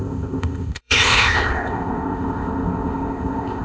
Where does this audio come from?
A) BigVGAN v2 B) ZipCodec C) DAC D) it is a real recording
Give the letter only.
B